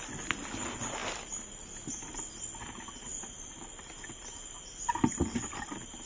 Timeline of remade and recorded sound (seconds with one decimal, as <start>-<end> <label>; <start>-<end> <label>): 0.0-6.1 recorded